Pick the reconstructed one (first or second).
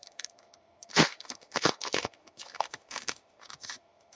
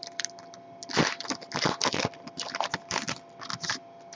first